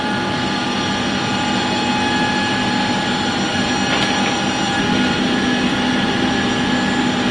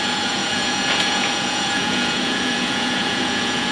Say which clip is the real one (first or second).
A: first